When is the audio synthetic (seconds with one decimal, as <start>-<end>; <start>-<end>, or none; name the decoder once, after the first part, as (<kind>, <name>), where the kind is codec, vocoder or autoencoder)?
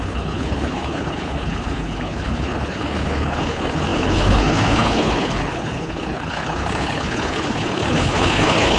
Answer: 0.0-8.8 (codec, HILCodec)